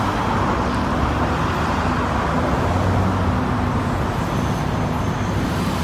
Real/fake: real